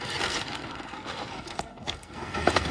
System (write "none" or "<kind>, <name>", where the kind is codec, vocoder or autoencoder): codec, SNAC